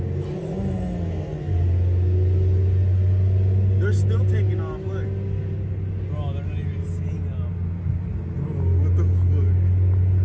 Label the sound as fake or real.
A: real